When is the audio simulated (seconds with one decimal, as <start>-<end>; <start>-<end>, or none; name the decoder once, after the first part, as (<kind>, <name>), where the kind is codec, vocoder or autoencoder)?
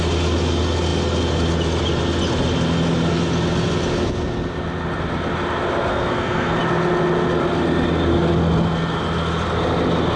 5.9-6.6 (codec, SNAC)